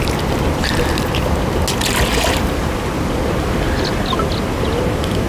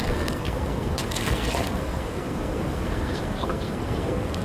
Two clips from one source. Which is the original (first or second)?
first